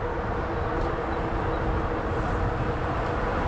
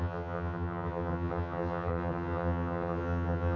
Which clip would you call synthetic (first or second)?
second